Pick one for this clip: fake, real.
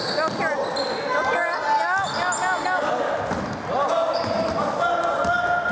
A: real